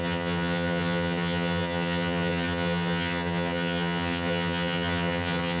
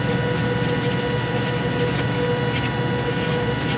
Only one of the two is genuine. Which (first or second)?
second